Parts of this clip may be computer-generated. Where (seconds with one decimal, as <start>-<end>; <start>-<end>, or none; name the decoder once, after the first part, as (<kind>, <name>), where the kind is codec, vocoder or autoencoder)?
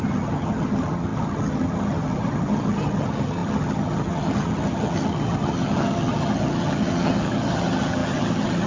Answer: 0.0-8.7 (vocoder, HiFi-GAN)